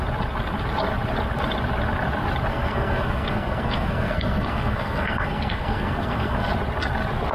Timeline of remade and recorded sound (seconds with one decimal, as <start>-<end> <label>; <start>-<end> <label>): 0.0-2.5 recorded; 2.5-6.5 remade; 6.5-7.3 recorded

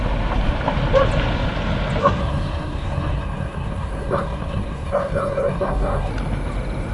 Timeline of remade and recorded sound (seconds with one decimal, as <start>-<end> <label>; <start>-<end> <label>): 0.0-2.0 recorded; 2.0-6.1 remade; 6.1-6.9 recorded